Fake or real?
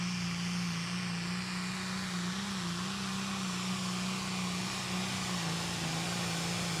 real